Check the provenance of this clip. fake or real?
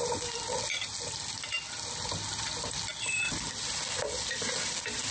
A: real